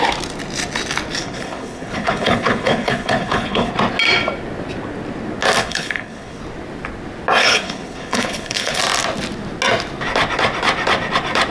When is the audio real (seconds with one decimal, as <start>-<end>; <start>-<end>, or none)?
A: 0.0-1.2; 3.7-5.6; 6.4-7.4; 8.8-11.5